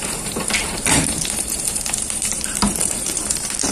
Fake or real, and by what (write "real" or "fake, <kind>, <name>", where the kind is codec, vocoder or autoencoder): fake, vocoder, BigVGAN v2